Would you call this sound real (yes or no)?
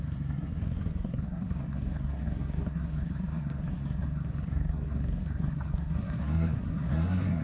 no